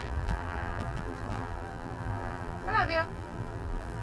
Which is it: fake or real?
fake